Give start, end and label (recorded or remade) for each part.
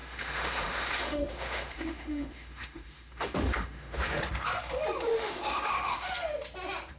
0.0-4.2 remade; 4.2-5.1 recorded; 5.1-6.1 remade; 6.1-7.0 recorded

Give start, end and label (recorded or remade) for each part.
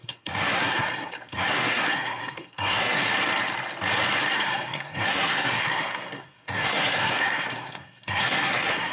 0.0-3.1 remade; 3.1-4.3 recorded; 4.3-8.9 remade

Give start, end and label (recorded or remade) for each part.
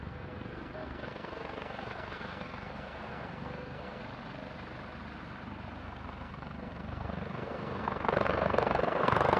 0.0-4.0 remade; 4.0-5.8 recorded; 5.8-9.4 remade